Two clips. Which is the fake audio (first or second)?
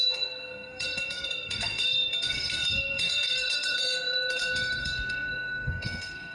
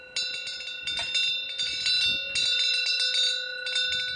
first